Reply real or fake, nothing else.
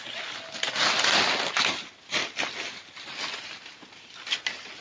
real